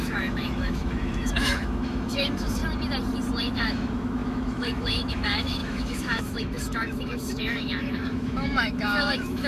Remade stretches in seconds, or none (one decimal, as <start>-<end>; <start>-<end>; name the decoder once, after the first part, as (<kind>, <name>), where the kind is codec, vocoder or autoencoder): 0.0-2.6 (autoencoder, DAC-VAE); 3.4-9.5